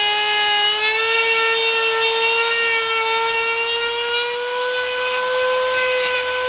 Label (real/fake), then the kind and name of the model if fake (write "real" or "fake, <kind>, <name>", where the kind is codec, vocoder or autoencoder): real